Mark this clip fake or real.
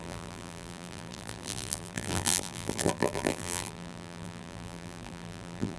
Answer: fake